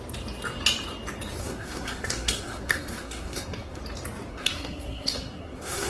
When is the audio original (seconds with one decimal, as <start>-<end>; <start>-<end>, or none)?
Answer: 0.0-1.4; 3.8-4.3